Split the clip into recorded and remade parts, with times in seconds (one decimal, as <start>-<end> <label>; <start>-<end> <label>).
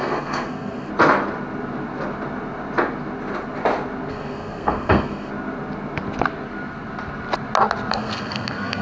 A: 0.0-0.9 remade; 0.9-4.1 recorded; 4.1-5.3 remade; 5.3-7.9 recorded; 7.9-8.8 remade